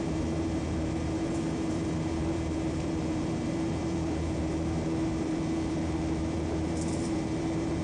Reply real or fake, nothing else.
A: fake